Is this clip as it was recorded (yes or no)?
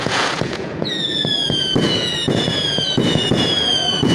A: no